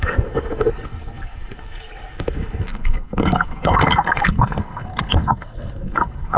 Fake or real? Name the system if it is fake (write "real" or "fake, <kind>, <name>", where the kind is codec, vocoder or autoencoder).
fake, codec, SNAC